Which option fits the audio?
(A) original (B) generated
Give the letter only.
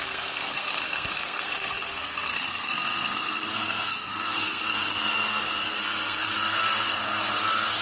B